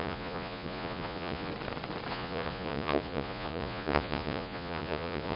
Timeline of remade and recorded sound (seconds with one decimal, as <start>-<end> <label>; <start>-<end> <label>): 0.0-1.5 remade; 1.5-2.1 recorded; 2.1-5.4 remade